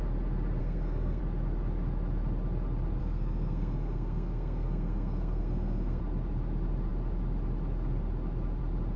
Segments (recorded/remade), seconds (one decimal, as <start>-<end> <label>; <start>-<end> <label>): 0.0-0.6 recorded; 0.6-1.2 remade; 1.2-3.0 recorded; 3.0-6.0 remade; 6.0-9.0 recorded